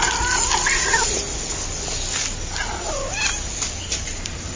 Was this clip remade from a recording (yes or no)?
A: no